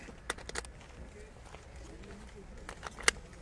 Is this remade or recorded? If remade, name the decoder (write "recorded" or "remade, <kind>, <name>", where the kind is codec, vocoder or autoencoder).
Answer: recorded